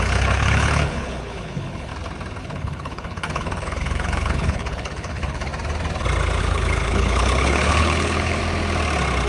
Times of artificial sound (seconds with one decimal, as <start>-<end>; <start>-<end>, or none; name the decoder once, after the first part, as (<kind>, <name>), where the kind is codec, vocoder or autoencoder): 0.0-1.9 (codec, HILCodec); 2.4-5.5; 6.4-8.4